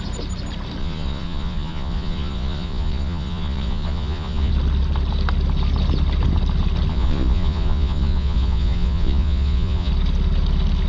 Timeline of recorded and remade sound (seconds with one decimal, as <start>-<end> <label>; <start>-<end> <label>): 0.0-0.8 recorded; 0.8-4.5 remade; 4.5-6.9 recorded; 6.9-9.9 remade; 9.9-10.9 recorded